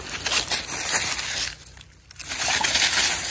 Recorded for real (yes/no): yes